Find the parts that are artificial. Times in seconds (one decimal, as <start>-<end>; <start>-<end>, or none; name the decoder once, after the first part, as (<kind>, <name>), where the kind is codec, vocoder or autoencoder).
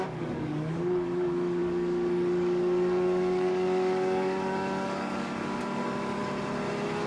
0.0-6.2 (codec, DAC)